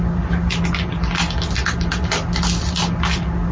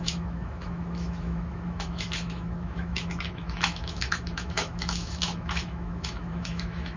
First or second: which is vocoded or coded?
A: second